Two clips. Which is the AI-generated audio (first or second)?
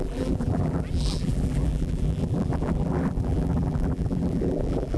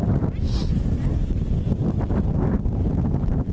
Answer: first